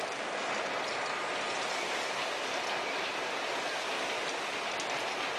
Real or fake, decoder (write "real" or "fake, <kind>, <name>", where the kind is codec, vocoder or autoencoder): real